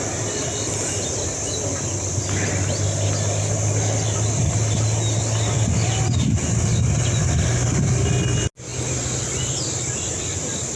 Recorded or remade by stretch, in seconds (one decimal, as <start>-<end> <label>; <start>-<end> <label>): 0.0-10.8 recorded